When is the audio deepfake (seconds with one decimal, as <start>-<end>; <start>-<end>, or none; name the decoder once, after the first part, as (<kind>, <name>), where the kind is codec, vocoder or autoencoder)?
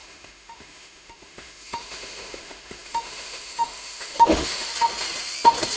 0.0-4.7 (autoencoder, DAC-VAE)